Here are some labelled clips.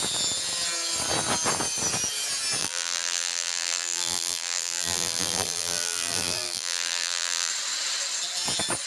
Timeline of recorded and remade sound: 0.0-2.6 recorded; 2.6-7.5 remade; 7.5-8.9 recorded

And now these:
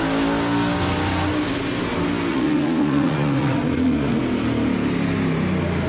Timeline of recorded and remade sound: 0.0-2.3 recorded; 2.3-4.2 remade; 4.2-5.9 recorded

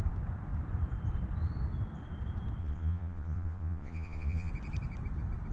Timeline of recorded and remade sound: 0.0-2.6 recorded; 2.6-4.5 remade; 4.5-5.5 recorded

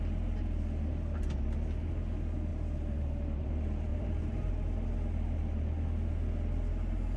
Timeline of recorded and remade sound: 0.0-2.5 recorded; 2.5-3.5 remade; 3.5-3.9 recorded; 3.9-4.5 remade; 4.5-7.2 recorded

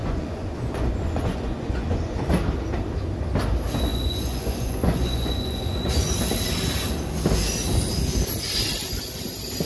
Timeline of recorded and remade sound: 0.0-2.3 remade; 2.3-3.9 recorded; 3.9-6.1 remade; 6.1-9.7 recorded